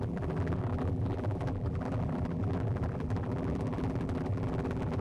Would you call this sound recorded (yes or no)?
no